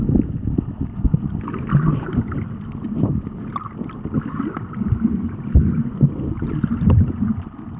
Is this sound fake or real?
real